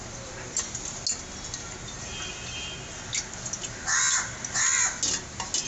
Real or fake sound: real